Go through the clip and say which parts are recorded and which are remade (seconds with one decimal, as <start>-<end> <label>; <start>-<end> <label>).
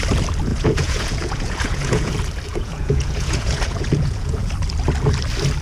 0.0-0.5 recorded; 0.5-2.1 remade; 2.1-2.5 recorded; 2.5-4.5 remade; 4.5-5.6 recorded